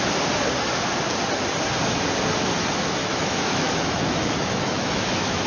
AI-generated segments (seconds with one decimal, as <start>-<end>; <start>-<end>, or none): 3.0-5.5